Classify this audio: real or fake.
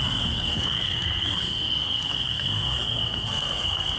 fake